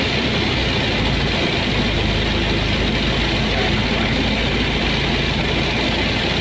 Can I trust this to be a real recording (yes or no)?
yes